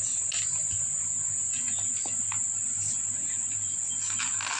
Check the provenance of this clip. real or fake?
real